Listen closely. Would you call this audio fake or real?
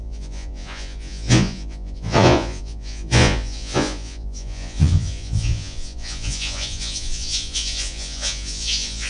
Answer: fake